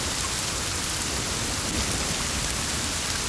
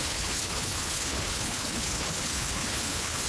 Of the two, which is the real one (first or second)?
first